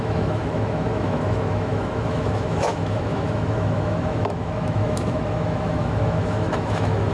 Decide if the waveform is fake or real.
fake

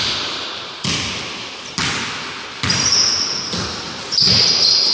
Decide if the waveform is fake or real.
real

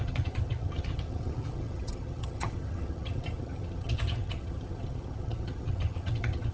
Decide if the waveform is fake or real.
fake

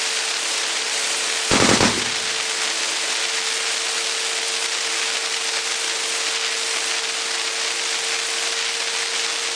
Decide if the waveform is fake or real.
real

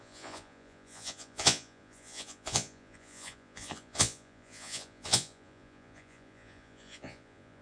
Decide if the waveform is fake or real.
fake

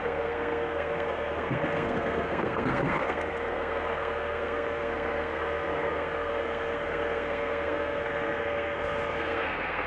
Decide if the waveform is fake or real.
fake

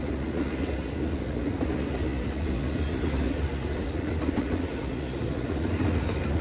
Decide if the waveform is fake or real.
fake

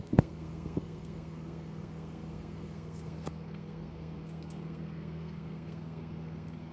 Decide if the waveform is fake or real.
fake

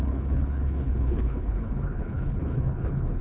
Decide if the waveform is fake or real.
fake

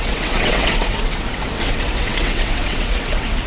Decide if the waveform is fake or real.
fake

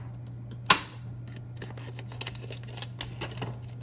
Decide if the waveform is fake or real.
real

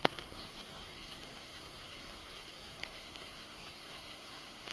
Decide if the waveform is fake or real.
fake